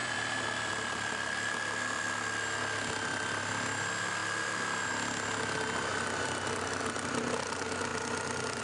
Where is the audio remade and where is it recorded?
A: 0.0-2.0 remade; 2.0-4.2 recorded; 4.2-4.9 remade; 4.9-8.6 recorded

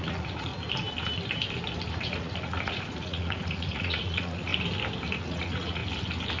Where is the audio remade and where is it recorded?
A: 0.0-0.5 remade; 0.5-1.9 recorded; 1.9-4.5 remade; 4.5-5.2 recorded; 5.2-5.8 remade; 5.8-6.4 recorded

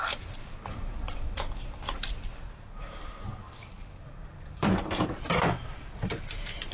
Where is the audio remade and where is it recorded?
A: 0.0-6.7 remade

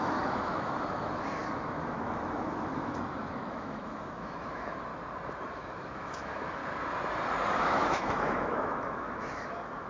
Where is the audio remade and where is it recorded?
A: 0.0-4.9 remade; 4.9-5.5 recorded; 5.5-6.6 remade; 6.6-7.5 recorded; 7.5-9.9 remade

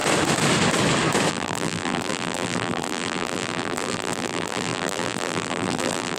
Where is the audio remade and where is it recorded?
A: 0.0-1.3 recorded; 1.3-6.2 remade

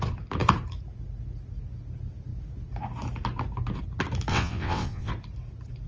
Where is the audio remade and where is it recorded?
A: 0.0-4.3 recorded; 4.3-5.1 remade; 5.1-5.9 recorded

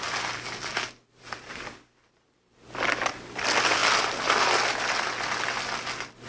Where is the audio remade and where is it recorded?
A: 0.0-6.3 recorded

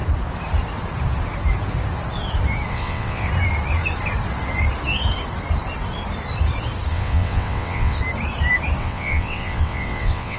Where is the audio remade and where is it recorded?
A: 0.0-2.7 recorded; 2.7-3.3 remade; 3.3-6.9 recorded; 6.9-8.0 remade; 8.0-8.8 recorded; 8.8-10.4 remade